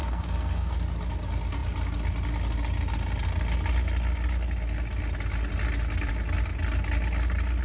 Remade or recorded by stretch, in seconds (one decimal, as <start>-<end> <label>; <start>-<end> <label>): 0.0-0.7 remade; 0.7-7.6 recorded